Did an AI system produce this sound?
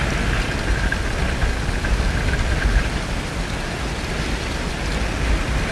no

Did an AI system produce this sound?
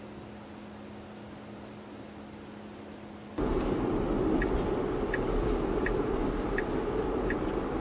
no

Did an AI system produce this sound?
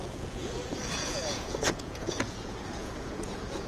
yes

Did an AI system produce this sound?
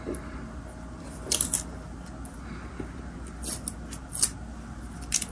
no